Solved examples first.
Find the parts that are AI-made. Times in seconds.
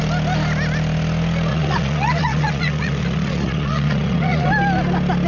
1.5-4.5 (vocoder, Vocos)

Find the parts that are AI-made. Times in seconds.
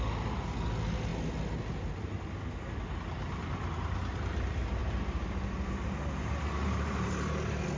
3.1-4.0 (vocoder, BigVGAN v2); 4.8-7.3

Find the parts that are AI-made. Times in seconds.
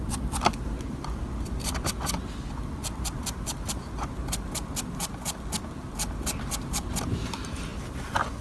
none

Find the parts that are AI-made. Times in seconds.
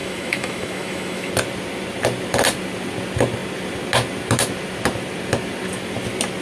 0.0-1.3 (autoencoder, DAC-VAE)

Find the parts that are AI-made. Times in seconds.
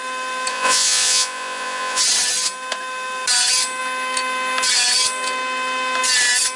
0.5-2.0 (vocoder, Vocos)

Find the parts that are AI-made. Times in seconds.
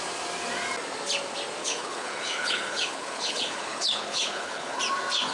1.6-4.8 (codec, HILCodec)